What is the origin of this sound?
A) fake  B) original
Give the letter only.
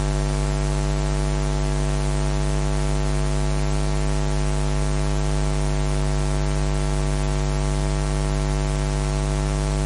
B